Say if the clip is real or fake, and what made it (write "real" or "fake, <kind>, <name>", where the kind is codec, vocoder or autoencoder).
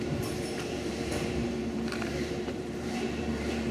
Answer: fake, vocoder, BigVGAN v2